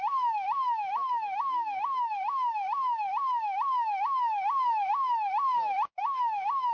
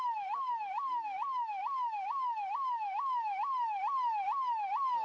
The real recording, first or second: second